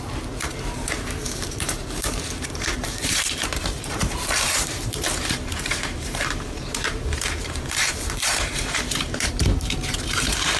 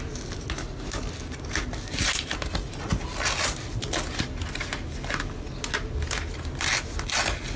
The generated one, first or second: first